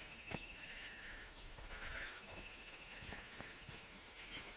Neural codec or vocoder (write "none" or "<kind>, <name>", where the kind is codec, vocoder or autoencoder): autoencoder, DAC-VAE